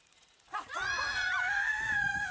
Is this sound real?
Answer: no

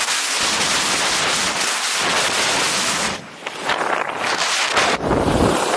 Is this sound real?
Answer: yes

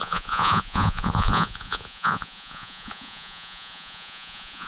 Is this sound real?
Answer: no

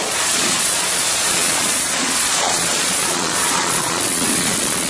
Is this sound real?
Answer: no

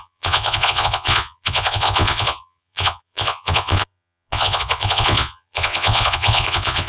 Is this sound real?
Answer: no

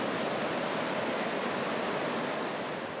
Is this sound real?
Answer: yes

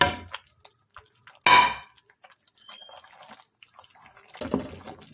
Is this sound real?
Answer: yes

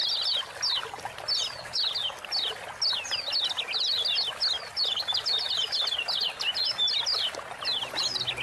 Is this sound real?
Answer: yes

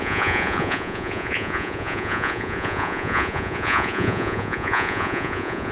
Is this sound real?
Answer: no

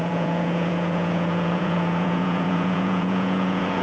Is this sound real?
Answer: no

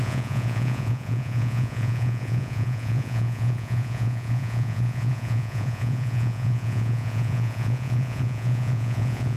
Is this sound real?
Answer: no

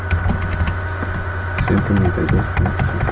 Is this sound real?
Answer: yes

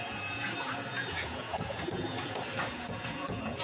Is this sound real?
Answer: no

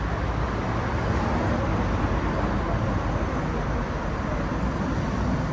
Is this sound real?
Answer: yes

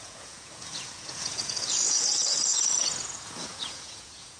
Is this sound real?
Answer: no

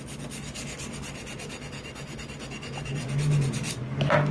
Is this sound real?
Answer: yes